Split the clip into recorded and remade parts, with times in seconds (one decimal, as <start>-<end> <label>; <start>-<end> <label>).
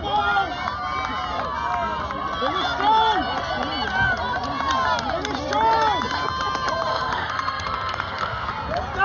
0.0-6.9 recorded; 6.9-8.5 remade; 8.5-9.0 recorded